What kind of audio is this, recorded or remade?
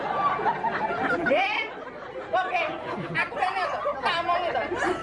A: recorded